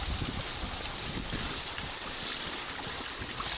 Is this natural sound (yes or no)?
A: yes